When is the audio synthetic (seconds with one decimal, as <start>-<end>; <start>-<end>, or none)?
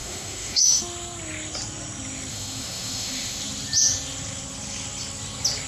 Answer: 0.0-0.8; 2.3-3.4